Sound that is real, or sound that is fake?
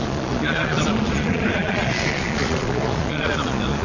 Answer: fake